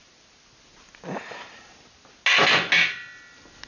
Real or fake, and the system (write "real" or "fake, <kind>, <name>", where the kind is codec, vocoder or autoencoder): real